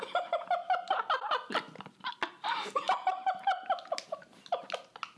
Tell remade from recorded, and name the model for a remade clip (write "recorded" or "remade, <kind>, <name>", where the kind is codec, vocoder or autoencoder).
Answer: recorded